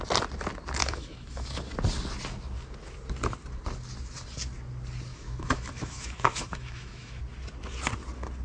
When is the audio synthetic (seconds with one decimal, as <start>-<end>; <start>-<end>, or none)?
0.8-1.6; 5.1-7.2

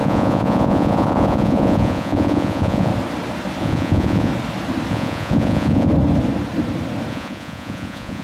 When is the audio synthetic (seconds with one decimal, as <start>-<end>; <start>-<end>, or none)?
0.0-2.9; 3.6-4.3; 4.9-5.9; 7.1-8.2

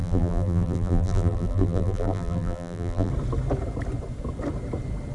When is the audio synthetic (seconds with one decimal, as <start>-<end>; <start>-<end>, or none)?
0.0-3.1

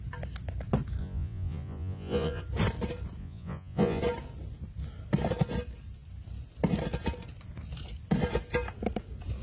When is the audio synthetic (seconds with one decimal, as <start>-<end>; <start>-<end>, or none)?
1.0-2.4; 3.2-4.0